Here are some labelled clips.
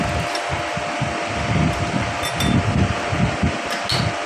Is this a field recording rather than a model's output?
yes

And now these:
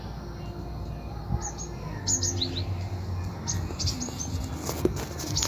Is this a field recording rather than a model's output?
yes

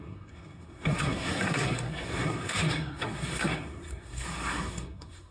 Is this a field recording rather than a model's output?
no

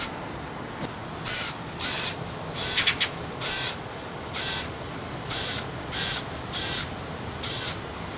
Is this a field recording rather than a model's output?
yes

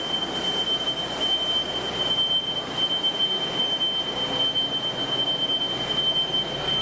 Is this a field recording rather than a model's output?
yes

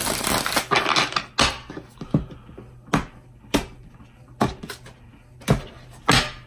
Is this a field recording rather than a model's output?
yes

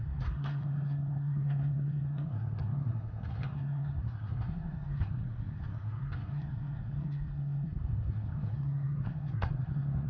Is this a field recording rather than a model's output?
no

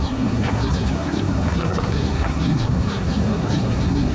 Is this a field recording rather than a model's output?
no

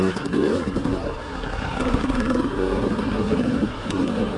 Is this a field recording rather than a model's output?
no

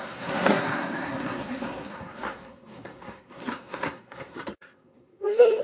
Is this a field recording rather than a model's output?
no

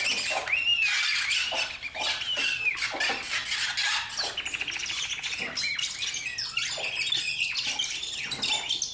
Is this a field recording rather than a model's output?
yes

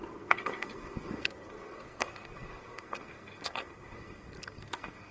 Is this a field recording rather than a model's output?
no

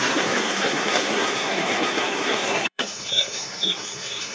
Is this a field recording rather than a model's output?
no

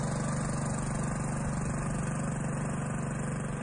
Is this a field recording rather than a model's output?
yes